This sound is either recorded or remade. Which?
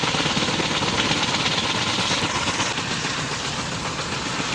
recorded